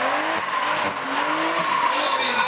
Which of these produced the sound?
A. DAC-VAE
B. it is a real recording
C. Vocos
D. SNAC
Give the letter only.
B